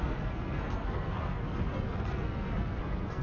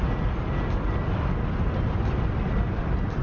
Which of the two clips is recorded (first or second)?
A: second